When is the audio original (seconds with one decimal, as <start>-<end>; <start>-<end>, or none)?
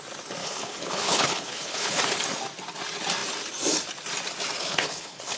0.0-0.4; 2.0-4.6